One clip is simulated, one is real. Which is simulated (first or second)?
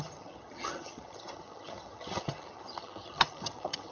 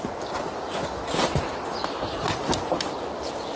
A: first